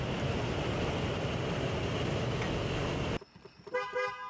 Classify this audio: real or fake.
real